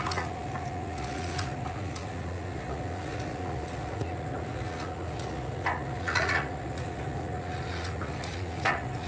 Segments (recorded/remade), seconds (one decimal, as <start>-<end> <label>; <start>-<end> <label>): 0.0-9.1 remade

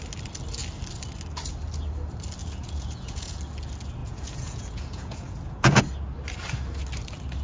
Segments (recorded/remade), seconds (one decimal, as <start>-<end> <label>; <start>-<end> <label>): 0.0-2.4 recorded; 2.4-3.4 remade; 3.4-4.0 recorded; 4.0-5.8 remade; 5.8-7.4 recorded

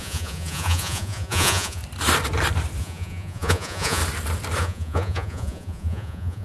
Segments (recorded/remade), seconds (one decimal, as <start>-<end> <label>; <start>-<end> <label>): 0.0-1.8 remade; 1.8-2.8 recorded; 2.8-4.0 remade; 4.0-4.6 recorded; 4.6-6.4 remade

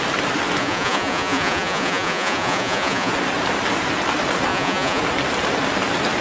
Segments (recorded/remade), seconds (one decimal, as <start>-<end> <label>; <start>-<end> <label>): 0.0-0.6 recorded; 0.6-3.1 remade; 3.1-4.5 recorded; 4.5-5.0 remade; 5.0-6.2 recorded

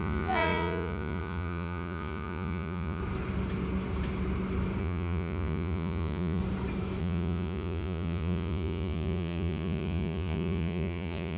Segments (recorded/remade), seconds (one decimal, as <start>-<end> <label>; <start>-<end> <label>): 0.0-3.0 remade; 3.0-4.8 recorded; 4.8-6.4 remade; 6.4-7.0 recorded; 7.0-11.4 remade

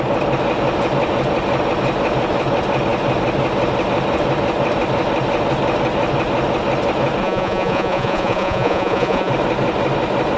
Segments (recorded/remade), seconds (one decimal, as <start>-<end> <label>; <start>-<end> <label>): 0.0-7.2 recorded; 7.2-9.3 remade; 9.3-10.4 recorded